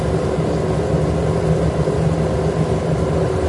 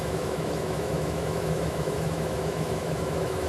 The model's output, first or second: second